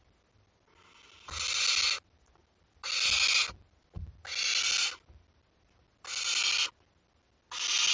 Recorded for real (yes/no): yes